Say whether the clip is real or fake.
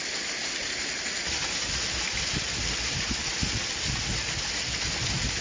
real